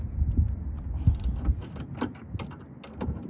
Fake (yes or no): no